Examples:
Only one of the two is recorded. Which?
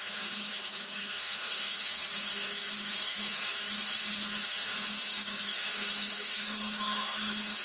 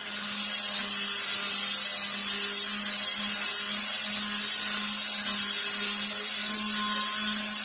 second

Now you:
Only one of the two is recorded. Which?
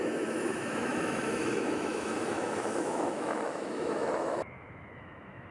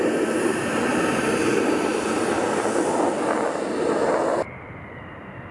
second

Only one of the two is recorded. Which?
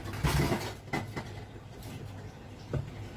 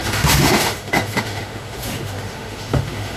first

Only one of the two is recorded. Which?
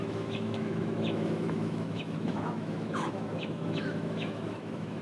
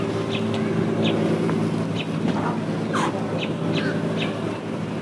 second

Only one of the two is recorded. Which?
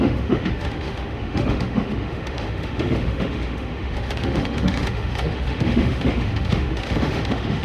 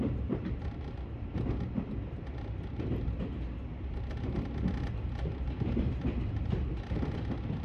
second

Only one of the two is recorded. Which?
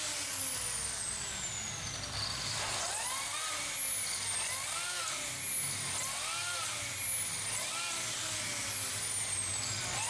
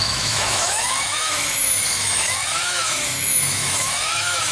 first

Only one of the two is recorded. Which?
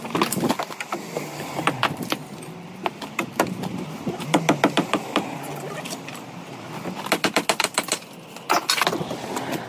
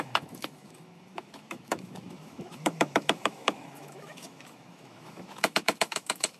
first